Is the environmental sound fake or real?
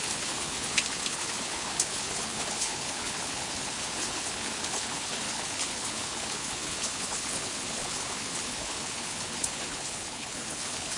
fake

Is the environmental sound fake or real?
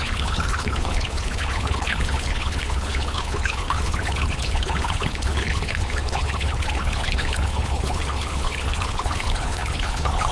fake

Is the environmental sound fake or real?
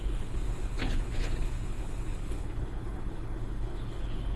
fake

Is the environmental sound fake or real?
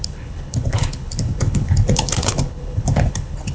fake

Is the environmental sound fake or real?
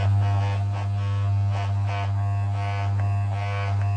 real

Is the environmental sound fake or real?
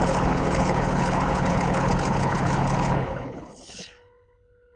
fake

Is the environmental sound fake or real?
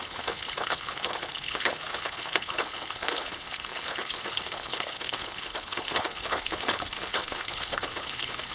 fake